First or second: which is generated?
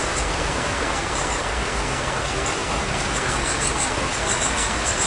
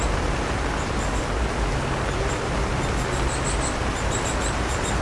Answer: first